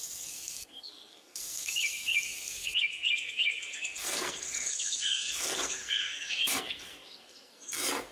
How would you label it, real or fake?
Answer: fake